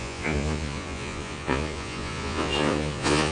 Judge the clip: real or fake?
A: fake